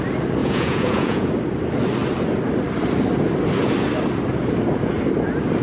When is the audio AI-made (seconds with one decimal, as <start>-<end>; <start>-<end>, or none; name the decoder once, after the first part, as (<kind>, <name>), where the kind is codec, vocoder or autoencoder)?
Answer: 0.4-1.3 (vocoder, Vocos)